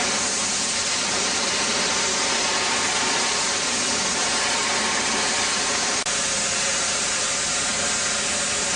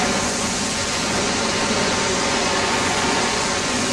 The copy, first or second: second